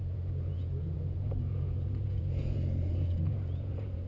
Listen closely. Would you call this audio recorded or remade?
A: remade